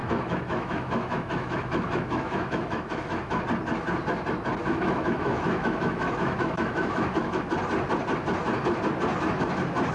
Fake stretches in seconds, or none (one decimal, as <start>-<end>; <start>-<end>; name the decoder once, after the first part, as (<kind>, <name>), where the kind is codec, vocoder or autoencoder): 0.0-3.4 (autoencoder, DAC-VAE); 4.6-7.4